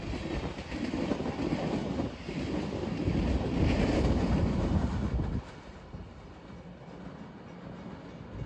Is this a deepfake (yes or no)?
no